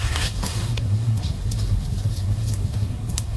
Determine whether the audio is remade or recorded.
remade